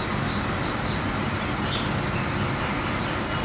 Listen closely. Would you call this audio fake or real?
real